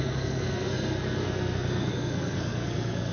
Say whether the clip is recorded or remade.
remade